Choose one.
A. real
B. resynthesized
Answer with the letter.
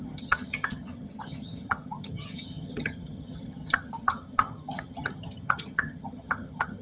B